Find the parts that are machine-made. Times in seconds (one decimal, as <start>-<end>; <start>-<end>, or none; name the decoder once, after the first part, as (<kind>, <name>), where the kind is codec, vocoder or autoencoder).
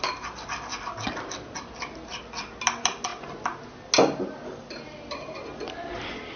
none